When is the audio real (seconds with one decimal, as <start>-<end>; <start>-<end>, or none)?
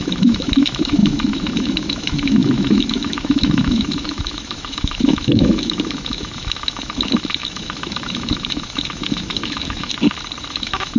9.9-10.5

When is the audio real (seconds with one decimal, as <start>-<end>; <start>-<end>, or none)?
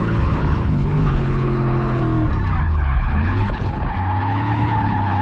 2.0-2.6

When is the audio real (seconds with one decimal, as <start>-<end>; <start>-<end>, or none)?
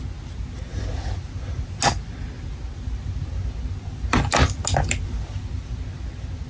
0.0-6.5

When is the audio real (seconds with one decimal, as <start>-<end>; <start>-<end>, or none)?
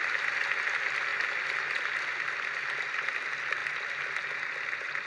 0.0-5.1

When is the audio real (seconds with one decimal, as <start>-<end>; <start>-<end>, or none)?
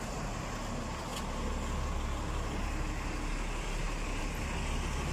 0.0-5.1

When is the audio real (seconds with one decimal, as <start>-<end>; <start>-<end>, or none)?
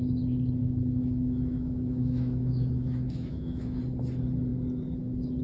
0.0-0.6; 3.8-5.4